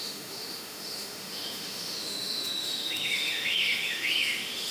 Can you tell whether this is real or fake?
fake